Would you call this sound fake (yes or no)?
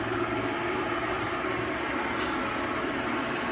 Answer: no